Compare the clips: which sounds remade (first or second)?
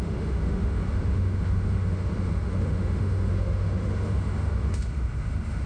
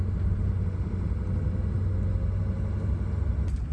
first